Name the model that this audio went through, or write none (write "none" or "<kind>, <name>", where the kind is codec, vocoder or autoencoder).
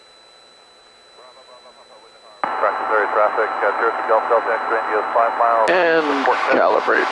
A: none